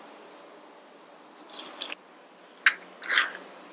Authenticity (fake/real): real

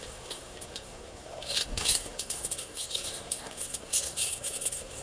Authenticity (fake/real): fake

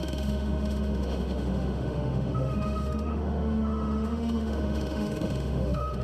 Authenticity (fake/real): fake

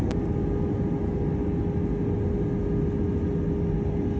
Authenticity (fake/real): real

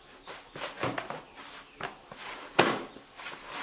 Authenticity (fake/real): real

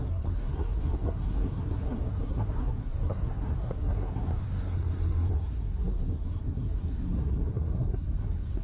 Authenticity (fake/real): fake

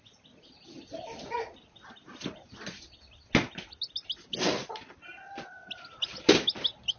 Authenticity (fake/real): real